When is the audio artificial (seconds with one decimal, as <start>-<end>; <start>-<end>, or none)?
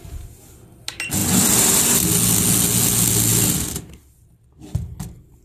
none